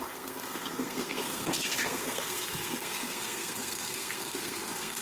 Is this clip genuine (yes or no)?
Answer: no